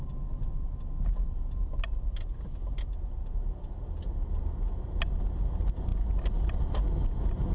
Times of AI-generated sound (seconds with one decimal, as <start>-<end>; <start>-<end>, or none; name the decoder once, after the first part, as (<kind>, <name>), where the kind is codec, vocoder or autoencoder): none